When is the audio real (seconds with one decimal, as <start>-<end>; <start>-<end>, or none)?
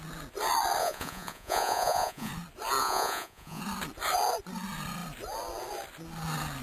0.0-0.8; 2.3-2.8; 3.6-6.6